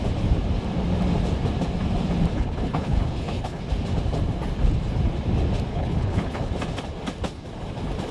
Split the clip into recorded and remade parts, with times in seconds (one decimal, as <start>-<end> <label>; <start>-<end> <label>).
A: 0.0-2.3 recorded; 2.3-3.6 remade; 3.6-5.7 recorded; 5.7-6.5 remade; 6.5-8.1 recorded